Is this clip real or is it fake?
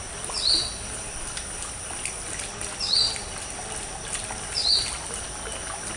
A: real